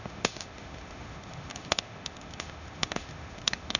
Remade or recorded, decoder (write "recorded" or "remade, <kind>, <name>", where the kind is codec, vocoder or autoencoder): remade, autoencoder, DAC-VAE